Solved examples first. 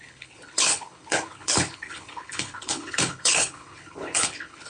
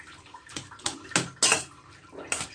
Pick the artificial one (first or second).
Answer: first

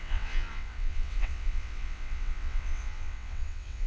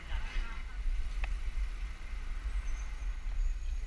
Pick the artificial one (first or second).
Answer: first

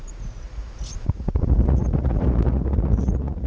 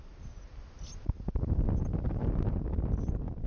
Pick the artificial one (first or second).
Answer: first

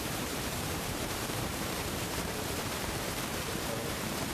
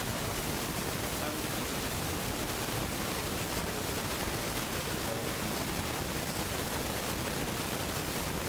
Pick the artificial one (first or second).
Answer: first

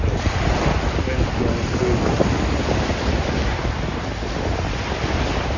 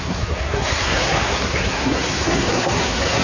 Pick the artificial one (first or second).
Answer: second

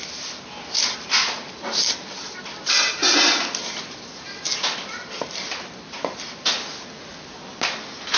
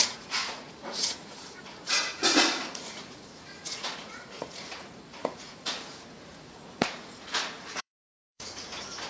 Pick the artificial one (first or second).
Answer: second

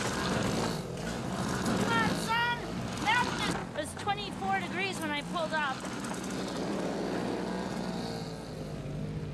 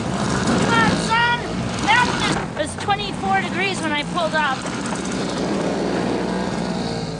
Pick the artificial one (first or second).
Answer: second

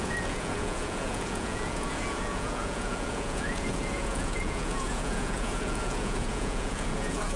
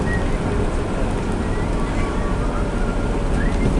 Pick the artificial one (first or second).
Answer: first